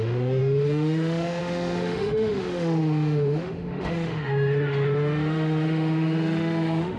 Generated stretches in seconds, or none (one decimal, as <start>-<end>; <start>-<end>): 0.0-7.0